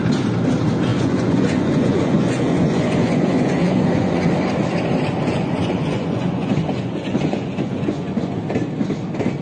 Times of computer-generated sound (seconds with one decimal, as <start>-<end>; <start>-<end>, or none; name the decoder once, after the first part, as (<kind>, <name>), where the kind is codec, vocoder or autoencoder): 0.9-4.3 (vocoder, Vocos); 5.3-8.4